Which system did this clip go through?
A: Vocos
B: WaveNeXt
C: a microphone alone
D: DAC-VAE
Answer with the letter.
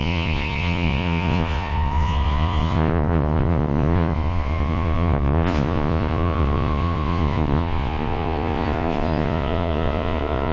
A